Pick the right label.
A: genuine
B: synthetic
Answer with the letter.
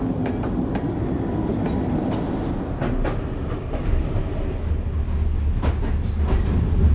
A